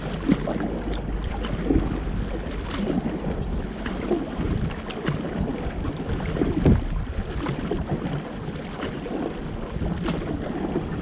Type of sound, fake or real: real